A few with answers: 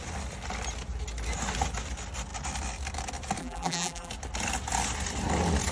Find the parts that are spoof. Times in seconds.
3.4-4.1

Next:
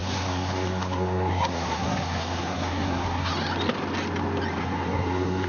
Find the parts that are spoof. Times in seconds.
0.0-3.3; 4.6-5.5

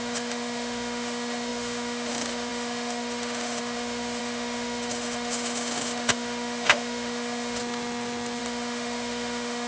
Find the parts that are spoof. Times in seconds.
0.0-7.6; 8.4-9.7